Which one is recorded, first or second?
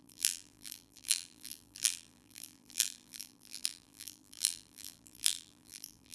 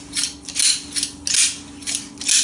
second